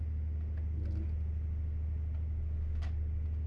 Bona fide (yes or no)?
yes